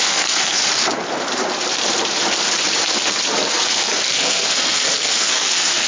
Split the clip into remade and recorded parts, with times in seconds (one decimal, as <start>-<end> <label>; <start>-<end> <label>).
0.0-0.6 remade; 0.6-3.5 recorded; 3.5-5.9 remade